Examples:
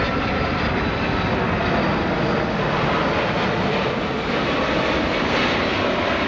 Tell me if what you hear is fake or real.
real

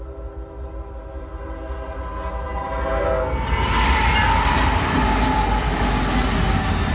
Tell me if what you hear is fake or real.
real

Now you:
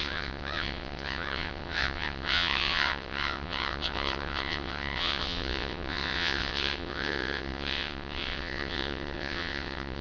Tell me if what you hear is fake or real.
fake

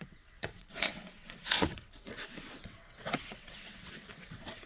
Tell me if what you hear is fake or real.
fake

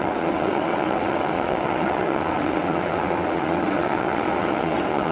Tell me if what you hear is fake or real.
fake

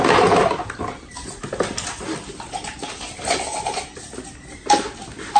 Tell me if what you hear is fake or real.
real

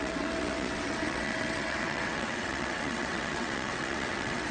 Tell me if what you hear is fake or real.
fake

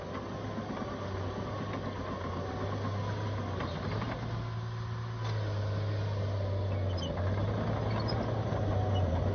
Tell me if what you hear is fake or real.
real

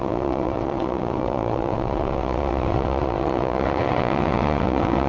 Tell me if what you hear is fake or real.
fake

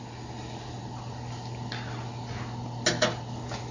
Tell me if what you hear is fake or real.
real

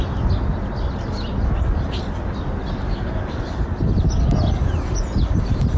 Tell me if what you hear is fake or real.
real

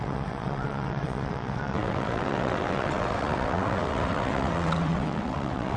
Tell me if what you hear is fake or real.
fake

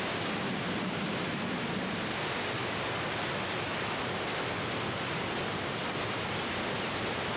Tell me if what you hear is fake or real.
real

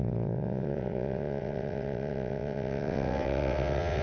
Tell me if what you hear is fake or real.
fake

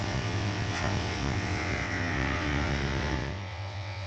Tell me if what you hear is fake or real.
fake